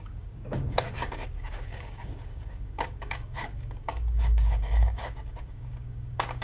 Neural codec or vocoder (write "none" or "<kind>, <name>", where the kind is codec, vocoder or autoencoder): codec, DAC